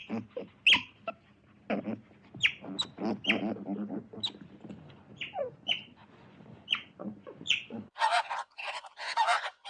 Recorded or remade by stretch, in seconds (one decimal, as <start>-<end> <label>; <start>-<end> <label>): 0.0-4.7 recorded; 4.7-9.7 remade

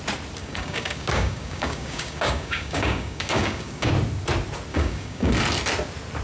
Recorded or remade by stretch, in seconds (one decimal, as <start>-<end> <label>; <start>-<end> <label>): 0.0-0.4 recorded; 0.4-3.9 remade; 3.9-4.7 recorded; 4.7-5.3 remade; 5.3-6.2 recorded

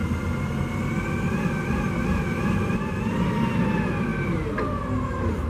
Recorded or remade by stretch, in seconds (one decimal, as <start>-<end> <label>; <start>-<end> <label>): 0.0-5.5 recorded

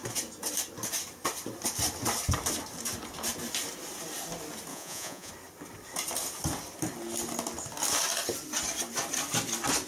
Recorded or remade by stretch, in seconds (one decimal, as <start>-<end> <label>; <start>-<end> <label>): 0.0-4.7 recorded; 4.7-5.3 remade; 5.3-9.9 recorded